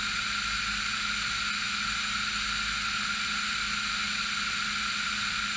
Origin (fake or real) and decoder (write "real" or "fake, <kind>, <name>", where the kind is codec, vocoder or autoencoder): real